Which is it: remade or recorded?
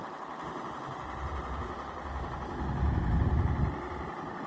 recorded